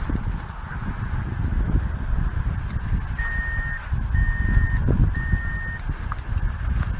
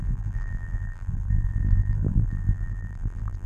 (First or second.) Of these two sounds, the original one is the first